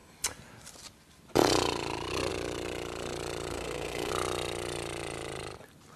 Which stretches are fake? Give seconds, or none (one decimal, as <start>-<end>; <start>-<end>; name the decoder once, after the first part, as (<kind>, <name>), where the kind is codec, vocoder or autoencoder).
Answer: 3.5-4.1 (codec, SNAC)